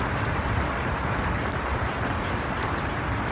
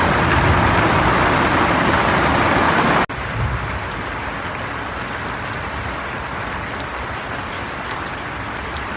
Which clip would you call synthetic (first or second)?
first